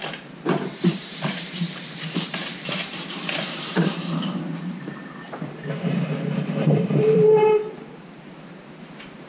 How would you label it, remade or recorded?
remade